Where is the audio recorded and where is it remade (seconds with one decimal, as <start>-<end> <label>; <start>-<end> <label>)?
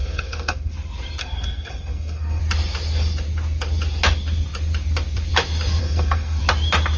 0.0-0.7 remade; 0.7-1.2 recorded; 1.2-2.4 remade; 2.4-5.8 recorded; 5.8-6.4 remade; 6.4-7.0 recorded